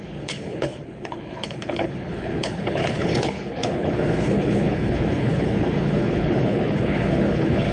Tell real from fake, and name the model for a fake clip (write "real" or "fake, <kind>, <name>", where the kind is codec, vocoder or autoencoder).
fake, codec, HILCodec